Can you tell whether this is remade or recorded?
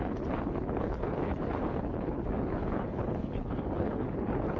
remade